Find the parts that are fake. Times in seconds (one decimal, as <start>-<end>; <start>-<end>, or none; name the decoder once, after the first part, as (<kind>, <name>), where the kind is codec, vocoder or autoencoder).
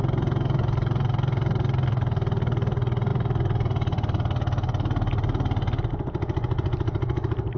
none